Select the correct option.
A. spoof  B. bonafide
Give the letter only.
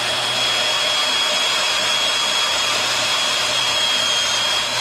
B